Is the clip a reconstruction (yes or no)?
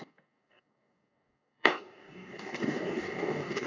yes